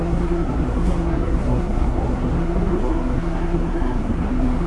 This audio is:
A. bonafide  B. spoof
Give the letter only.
B